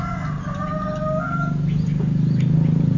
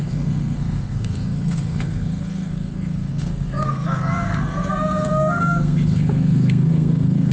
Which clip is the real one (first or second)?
first